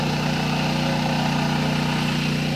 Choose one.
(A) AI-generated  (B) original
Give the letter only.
B